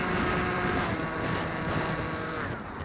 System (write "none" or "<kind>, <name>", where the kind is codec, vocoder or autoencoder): vocoder, BigVGAN v2